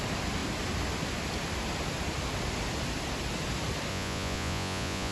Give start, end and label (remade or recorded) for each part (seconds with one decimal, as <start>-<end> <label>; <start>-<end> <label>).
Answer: 0.0-3.9 recorded; 3.9-5.1 remade